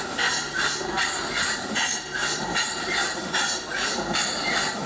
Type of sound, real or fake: real